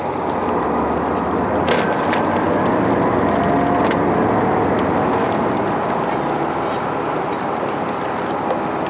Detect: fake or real real